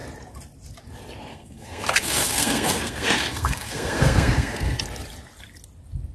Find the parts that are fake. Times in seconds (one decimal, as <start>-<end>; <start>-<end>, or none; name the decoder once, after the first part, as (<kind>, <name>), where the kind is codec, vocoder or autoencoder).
1.3-4.8 (codec, SNAC)